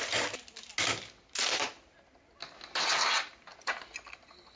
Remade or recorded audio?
recorded